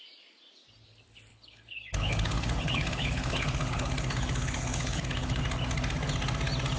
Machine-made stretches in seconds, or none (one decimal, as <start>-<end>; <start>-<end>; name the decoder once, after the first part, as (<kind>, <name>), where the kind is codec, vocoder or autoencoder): 1.3-5.4 (codec, HILCodec)